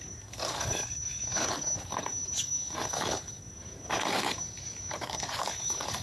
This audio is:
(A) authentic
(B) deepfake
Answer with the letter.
B